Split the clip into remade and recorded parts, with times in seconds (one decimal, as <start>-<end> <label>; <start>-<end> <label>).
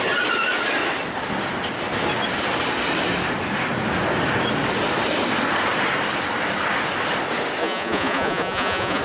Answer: 0.0-7.6 recorded; 7.6-9.0 remade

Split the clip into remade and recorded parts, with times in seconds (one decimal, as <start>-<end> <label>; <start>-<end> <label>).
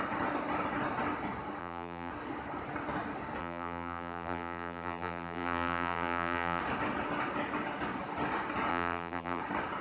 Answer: 0.0-1.6 recorded; 1.6-2.1 remade; 2.1-3.4 recorded; 3.4-6.6 remade; 6.6-8.7 recorded; 8.7-9.4 remade; 9.4-9.8 recorded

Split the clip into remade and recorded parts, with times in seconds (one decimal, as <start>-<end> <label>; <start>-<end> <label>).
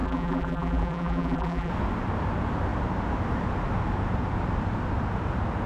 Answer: 0.0-1.7 remade; 1.7-5.7 recorded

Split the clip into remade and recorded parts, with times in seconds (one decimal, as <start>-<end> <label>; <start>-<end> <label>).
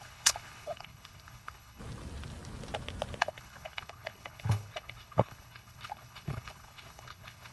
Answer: 0.0-1.8 remade; 1.8-3.2 recorded; 3.2-7.5 remade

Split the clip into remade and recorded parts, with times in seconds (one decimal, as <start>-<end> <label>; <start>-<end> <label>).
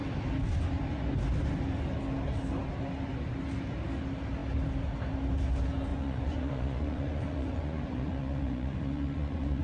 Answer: 0.0-5.9 recorded; 5.9-9.6 remade